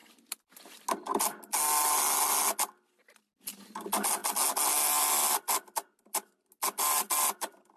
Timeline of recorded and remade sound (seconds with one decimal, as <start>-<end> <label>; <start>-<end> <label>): 0.0-7.8 recorded